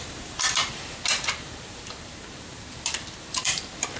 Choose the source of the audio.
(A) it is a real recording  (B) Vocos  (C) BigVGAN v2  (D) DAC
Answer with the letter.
C